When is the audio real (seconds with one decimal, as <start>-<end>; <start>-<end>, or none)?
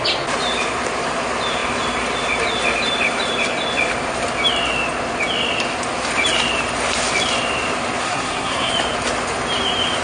0.0-8.0; 8.7-10.0